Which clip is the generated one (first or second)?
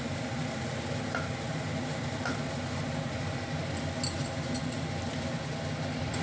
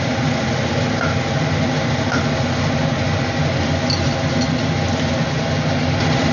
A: first